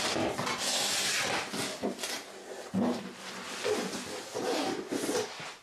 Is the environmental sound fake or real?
real